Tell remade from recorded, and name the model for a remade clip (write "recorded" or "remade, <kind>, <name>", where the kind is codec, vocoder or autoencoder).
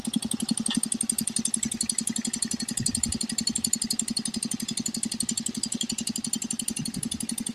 recorded